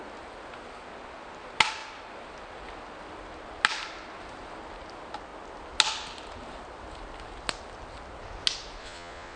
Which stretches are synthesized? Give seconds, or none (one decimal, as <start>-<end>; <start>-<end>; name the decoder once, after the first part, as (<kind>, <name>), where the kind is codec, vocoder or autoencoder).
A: 8.8-9.4 (vocoder, Vocos)